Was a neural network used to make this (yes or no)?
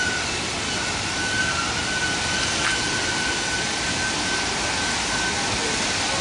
no